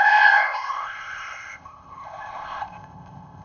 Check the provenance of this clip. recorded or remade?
remade